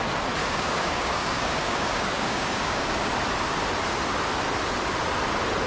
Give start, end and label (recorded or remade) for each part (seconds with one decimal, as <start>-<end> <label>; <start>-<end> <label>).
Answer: 0.0-0.4 recorded; 0.4-3.1 remade; 3.1-5.7 recorded